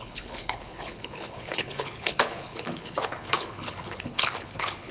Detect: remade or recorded remade